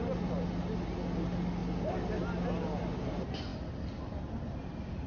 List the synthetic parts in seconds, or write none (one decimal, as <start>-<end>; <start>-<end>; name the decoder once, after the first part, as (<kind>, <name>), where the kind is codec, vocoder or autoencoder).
none